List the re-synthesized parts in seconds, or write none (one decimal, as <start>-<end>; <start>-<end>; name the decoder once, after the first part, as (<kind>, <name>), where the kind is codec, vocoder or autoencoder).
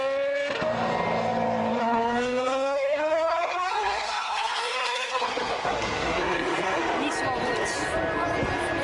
1.8-6.8 (codec, SNAC)